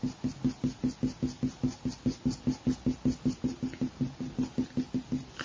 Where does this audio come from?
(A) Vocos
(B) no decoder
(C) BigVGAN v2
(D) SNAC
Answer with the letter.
B